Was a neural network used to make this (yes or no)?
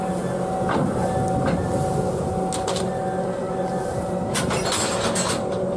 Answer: no